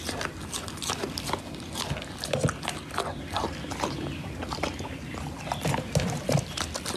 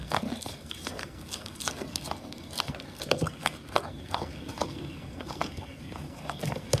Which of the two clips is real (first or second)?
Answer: first